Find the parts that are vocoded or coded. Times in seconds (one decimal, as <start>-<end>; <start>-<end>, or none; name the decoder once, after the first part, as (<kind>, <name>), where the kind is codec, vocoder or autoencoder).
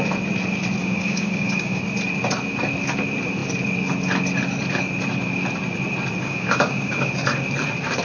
0.8-1.8 (codec, DAC); 6.2-7.1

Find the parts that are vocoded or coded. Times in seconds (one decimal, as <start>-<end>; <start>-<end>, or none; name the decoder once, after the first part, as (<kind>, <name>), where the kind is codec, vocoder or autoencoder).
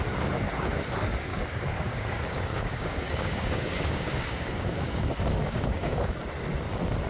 1.3-5.0 (codec, DAC); 5.4-6.1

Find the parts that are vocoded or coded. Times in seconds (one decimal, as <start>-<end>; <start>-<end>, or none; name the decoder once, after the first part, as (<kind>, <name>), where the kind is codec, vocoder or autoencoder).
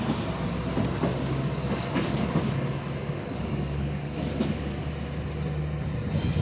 1.1-4.9 (codec, DAC)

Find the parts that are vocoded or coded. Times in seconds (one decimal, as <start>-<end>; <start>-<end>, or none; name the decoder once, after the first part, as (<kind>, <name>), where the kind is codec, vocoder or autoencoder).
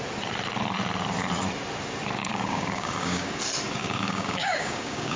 2.2-3.4 (codec, DAC); 3.8-5.2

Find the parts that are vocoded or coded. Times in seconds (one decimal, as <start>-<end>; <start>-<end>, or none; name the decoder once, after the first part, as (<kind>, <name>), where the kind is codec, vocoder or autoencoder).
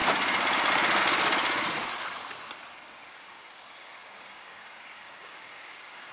3.1-6.1 (codec, DAC)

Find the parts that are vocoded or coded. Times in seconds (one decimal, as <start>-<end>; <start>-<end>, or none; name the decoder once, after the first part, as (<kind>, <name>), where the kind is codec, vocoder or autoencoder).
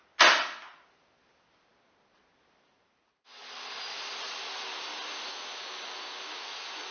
none